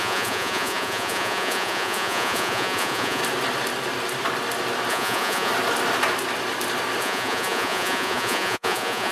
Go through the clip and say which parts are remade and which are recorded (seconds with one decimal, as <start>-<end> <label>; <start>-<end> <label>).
0.0-3.2 remade; 3.2-4.9 recorded; 4.9-5.5 remade; 5.5-7.0 recorded; 7.0-9.1 remade